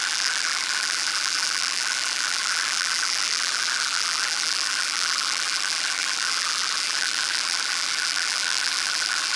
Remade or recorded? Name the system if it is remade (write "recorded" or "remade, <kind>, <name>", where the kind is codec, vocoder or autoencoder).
remade, vocoder, BigVGAN v2